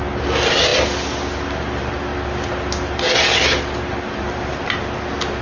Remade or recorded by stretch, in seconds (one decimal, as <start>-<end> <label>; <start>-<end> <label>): 0.0-5.4 recorded